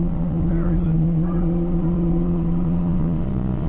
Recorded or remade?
remade